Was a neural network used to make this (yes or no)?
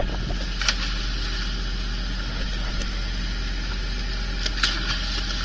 no